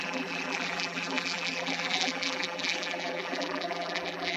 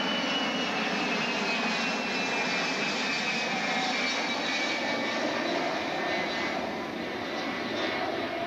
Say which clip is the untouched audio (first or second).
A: second